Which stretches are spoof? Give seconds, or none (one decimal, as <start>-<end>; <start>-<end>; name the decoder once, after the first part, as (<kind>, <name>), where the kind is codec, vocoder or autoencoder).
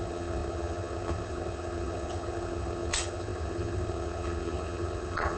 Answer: 0.0-5.4 (vocoder, HiFi-GAN)